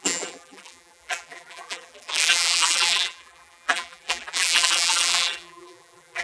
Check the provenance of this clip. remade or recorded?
remade